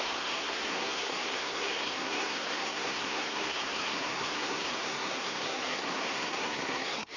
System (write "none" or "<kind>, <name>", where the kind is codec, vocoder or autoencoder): codec, SNAC